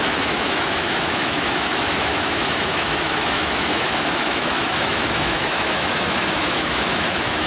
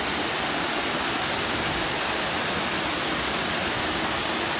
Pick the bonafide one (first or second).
second